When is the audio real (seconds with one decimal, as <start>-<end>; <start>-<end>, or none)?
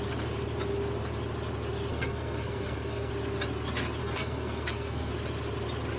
0.0-1.9; 3.1-4.0; 5.1-6.0